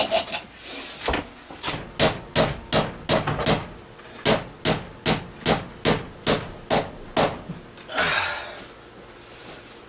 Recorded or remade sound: recorded